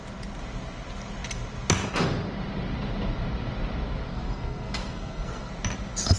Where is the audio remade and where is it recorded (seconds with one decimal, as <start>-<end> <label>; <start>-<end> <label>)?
0.0-4.1 recorded; 4.1-5.5 remade; 5.5-6.2 recorded